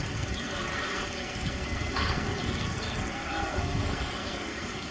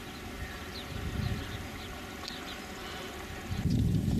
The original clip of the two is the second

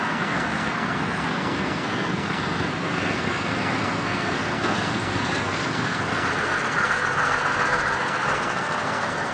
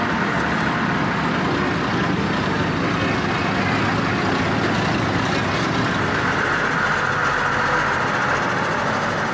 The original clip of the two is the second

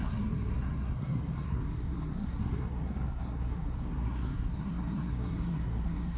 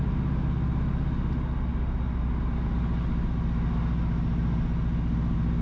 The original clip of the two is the second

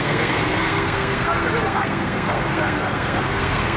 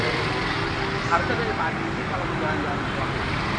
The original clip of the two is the second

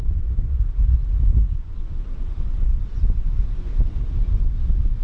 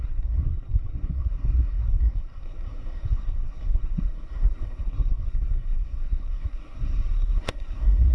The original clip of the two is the first